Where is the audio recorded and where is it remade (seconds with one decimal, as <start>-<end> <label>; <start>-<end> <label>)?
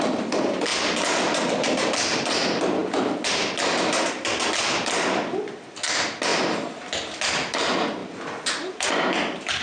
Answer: 0.0-0.7 recorded; 0.7-1.5 remade; 1.5-2.8 recorded; 2.8-4.8 remade; 4.8-9.6 recorded